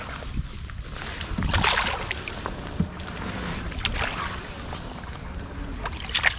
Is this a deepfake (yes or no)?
no